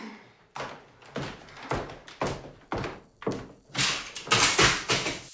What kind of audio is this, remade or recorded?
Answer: recorded